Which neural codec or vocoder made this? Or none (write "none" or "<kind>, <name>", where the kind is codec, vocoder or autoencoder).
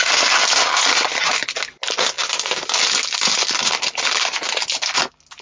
none